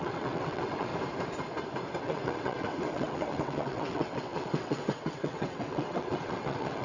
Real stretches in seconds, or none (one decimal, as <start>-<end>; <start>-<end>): 0.9-2.0